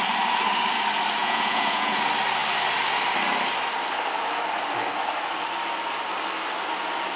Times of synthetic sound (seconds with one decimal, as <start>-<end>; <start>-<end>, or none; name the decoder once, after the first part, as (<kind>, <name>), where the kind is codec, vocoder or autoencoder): 1.2-2.0 (vocoder, Vocos)